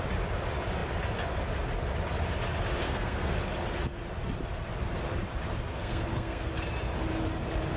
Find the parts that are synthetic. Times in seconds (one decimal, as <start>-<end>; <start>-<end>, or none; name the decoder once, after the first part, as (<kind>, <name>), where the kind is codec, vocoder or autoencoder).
2.8-3.3 (codec, SNAC); 5.8-6.5